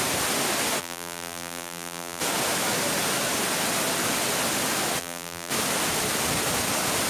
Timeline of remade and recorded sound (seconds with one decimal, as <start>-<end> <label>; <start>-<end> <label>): 0.0-0.8 recorded; 0.8-2.2 remade; 2.2-5.0 recorded; 5.0-5.5 remade; 5.5-7.1 recorded